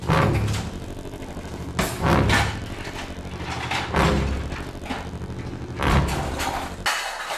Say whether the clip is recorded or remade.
recorded